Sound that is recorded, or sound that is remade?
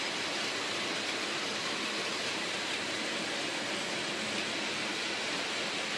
recorded